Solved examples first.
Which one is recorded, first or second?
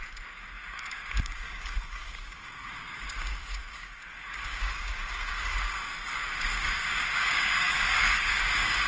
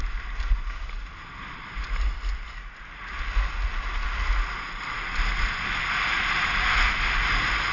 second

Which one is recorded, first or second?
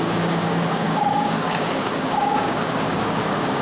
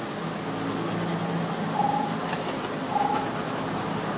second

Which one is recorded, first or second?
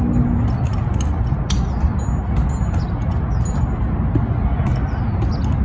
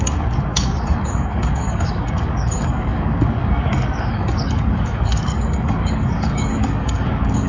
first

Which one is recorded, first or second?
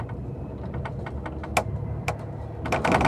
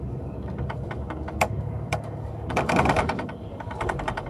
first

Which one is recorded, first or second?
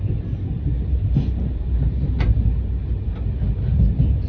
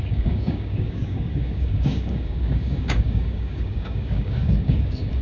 first